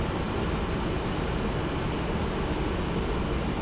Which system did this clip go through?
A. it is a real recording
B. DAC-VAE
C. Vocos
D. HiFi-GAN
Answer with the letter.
A